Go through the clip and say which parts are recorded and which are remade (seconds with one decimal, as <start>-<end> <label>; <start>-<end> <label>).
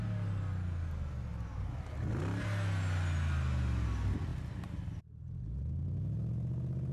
0.0-6.9 recorded